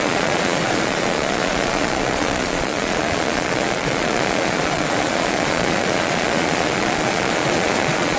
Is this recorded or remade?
remade